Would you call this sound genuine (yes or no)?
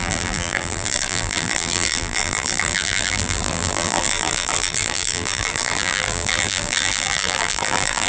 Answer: no